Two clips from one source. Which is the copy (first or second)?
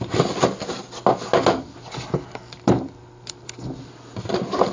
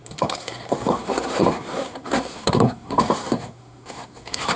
second